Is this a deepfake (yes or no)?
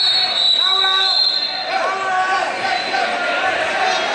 no